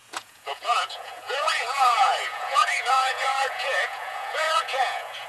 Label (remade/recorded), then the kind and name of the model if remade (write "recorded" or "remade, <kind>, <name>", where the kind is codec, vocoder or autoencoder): remade, vocoder, Vocos